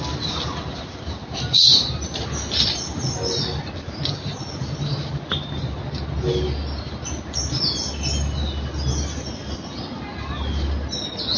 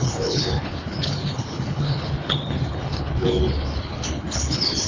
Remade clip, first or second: second